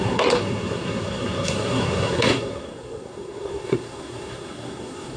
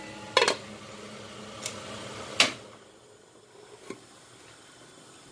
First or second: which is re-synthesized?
first